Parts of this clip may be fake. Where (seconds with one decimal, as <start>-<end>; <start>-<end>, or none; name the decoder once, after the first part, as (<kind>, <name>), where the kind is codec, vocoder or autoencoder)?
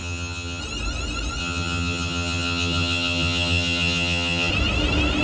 0.0-0.6 (vocoder, HiFi-GAN); 1.4-4.5